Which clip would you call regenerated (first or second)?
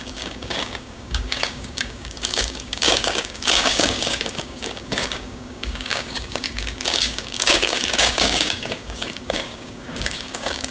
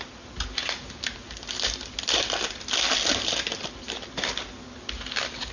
first